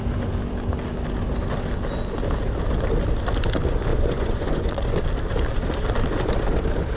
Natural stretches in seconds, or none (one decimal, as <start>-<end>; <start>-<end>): 0.0-3.9; 5.0-7.0